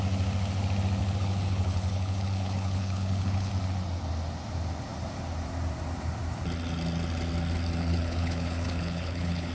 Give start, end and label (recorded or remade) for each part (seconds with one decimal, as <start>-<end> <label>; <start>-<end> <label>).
0.0-1.0 recorded; 1.0-3.5 remade; 3.5-7.8 recorded; 7.8-9.5 remade